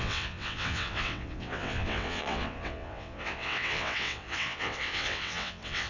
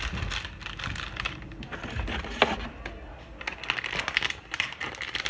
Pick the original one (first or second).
second